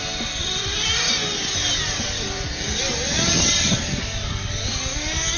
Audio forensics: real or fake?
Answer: real